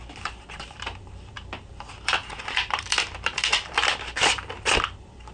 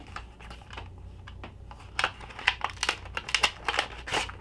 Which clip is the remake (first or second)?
first